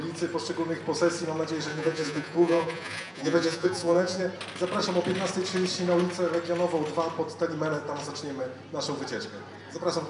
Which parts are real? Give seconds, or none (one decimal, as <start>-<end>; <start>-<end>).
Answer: 0.0-1.7; 4.2-10.1